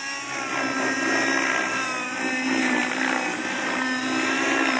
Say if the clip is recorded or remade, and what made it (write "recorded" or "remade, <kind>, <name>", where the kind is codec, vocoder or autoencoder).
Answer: recorded